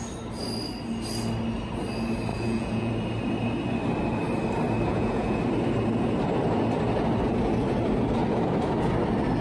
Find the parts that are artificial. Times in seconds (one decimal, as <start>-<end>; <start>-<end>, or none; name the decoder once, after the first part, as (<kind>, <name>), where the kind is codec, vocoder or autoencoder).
2.3-2.9 (vocoder, Vocos); 4.9-5.4